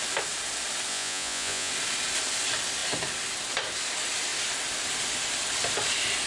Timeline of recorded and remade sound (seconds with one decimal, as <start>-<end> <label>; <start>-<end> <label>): 0.0-0.9 recorded; 0.9-1.7 remade; 1.7-6.3 recorded